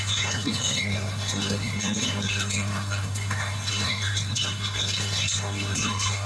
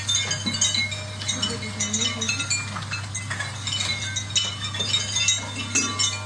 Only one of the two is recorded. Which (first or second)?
second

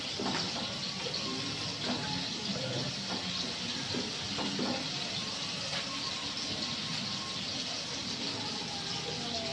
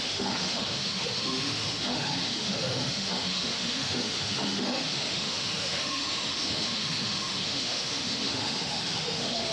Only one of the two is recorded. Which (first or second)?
first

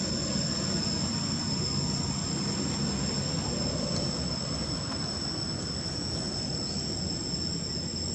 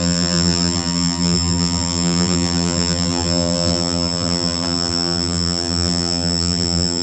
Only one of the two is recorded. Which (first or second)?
first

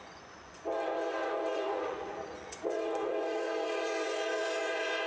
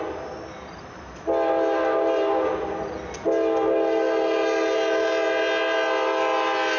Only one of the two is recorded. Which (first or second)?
second